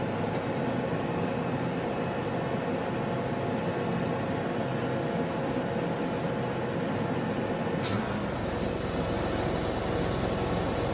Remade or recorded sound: recorded